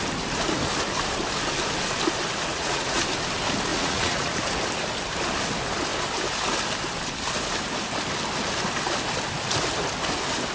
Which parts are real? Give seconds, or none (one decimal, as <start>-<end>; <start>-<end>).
0.0-2.5; 3.0-3.7; 4.3-10.5